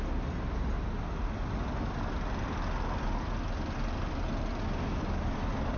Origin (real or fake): real